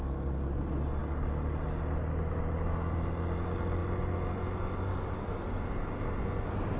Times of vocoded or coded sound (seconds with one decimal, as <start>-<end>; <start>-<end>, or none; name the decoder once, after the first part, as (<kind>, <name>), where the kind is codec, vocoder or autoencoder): none